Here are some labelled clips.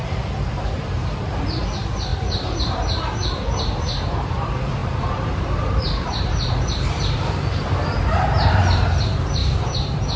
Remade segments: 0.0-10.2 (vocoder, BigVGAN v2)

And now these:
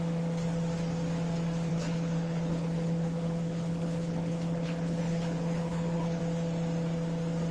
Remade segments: 1.7-6.2 (codec, HILCodec)

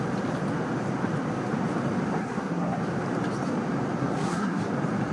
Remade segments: 2.2-2.8 (codec, SNAC); 4.0-4.6

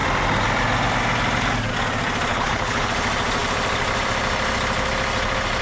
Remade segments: 2.3-2.9 (codec, HILCodec)

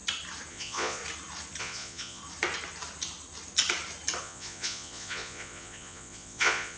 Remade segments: 0.5-1.0 (vocoder, Vocos); 1.6-2.2; 4.2-6.8

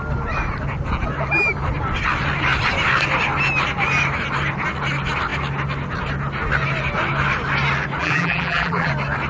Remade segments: 8.0-8.9 (vocoder, BigVGAN v2)